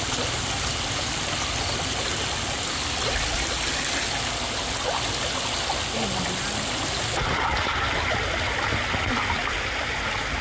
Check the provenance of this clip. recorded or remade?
recorded